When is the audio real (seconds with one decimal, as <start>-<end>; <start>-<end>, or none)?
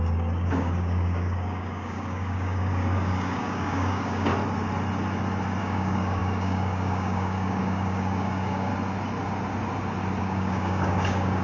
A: 4.3-5.6; 8.7-10.2